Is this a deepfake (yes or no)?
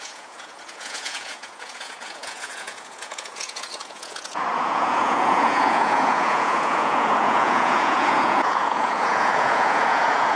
yes